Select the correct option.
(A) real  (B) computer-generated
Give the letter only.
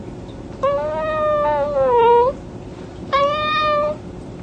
A